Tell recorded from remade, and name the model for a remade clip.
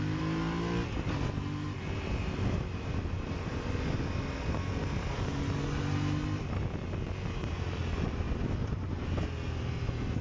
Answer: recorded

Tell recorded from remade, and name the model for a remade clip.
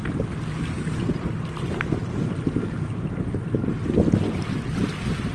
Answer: recorded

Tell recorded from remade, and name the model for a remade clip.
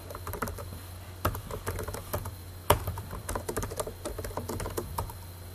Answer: recorded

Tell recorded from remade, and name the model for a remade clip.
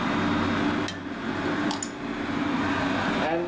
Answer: recorded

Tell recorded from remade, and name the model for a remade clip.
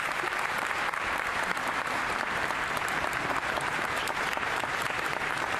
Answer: remade, vocoder, BigVGAN v2